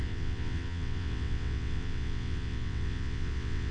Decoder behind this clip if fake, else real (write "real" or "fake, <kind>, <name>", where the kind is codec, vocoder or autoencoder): fake, vocoder, WaveNeXt